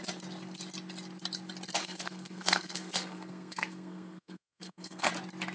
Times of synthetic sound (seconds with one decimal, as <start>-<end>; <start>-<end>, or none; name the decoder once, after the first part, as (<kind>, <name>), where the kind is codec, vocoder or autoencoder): 1.8-5.1 (codec, SNAC)